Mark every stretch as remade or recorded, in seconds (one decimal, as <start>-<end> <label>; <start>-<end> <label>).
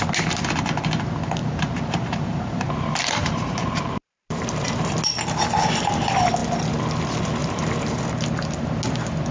0.0-1.4 recorded; 1.4-4.9 remade; 4.9-7.4 recorded; 7.4-8.0 remade; 8.0-9.3 recorded